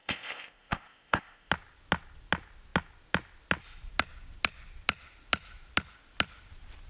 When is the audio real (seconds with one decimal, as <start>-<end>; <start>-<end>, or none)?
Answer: 1.5-6.9